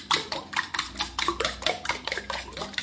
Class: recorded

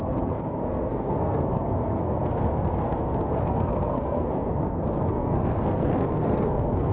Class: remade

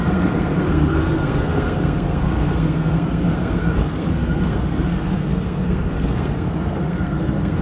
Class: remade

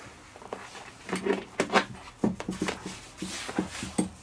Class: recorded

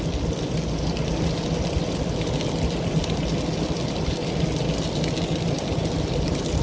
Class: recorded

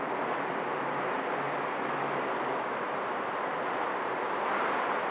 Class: recorded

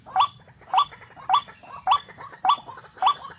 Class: recorded